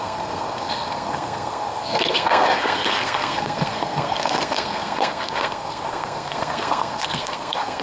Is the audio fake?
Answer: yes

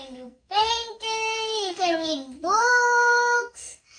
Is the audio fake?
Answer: yes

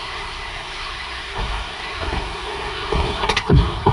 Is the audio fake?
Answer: yes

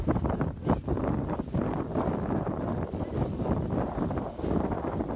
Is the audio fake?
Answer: no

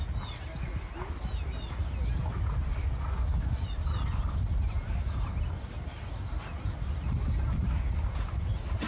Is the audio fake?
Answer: no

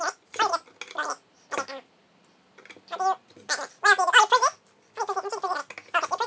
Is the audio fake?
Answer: no